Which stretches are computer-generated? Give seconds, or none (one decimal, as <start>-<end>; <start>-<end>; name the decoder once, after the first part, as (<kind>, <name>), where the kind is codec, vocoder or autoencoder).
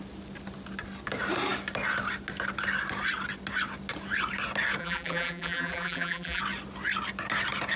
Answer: 4.8-6.4 (vocoder, BigVGAN v2)